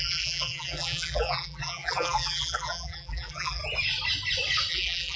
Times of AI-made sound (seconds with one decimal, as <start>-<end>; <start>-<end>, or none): 0.0-3.6; 4.7-5.2